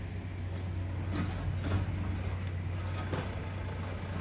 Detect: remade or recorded recorded